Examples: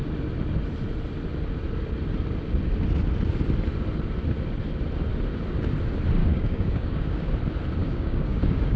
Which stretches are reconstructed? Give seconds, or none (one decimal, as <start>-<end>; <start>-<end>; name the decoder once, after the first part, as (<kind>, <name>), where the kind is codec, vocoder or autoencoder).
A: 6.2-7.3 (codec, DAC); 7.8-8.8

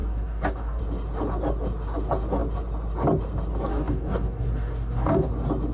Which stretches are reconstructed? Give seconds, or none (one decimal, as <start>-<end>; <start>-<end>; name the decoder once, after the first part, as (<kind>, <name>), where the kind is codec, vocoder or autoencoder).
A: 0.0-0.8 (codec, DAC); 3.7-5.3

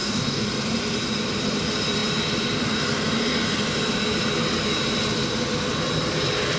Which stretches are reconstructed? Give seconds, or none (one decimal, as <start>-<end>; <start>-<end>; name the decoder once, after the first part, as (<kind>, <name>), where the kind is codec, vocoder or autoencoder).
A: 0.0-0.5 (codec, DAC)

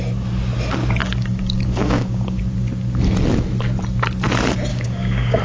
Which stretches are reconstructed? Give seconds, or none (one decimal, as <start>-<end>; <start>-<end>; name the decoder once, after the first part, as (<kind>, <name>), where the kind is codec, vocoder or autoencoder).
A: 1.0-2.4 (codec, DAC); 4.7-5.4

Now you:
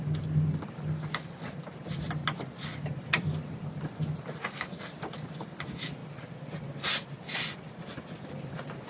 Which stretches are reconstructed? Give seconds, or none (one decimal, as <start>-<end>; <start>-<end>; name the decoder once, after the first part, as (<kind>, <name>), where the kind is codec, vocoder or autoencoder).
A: none

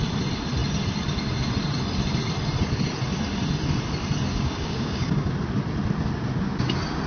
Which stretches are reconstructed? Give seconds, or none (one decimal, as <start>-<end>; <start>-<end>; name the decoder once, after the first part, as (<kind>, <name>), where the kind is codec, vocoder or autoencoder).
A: 4.3-5.3 (codec, DAC)